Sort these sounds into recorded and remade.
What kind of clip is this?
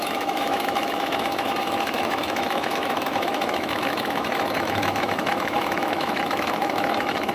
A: remade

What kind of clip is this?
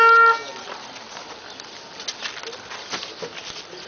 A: recorded